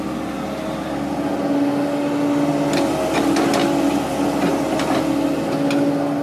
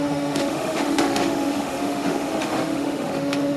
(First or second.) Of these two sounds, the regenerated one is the second